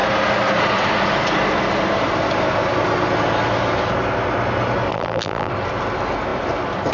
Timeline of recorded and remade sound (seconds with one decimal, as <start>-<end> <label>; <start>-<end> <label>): 0.0-4.9 recorded; 4.9-5.5 remade; 5.5-6.9 recorded